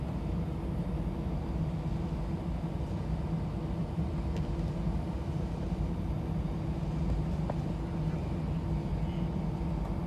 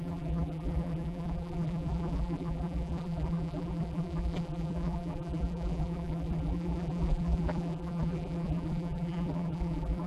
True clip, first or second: first